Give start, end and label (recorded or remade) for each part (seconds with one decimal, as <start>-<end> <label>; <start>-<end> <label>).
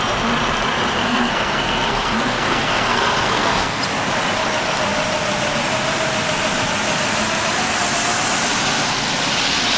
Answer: 0.0-1.0 recorded; 1.0-3.8 remade; 3.8-9.8 recorded